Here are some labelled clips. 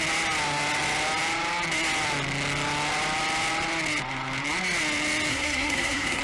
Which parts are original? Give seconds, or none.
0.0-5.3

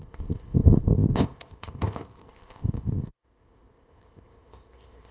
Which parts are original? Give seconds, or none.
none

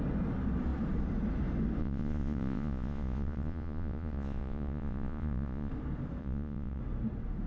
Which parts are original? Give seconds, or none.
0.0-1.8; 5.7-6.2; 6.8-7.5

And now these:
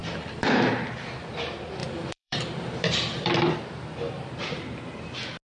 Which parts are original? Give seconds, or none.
0.7-1.8; 3.3-5.6

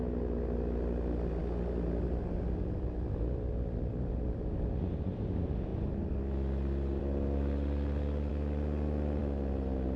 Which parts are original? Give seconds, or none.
0.0-10.0

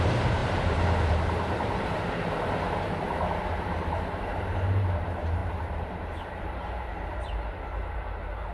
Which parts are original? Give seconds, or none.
none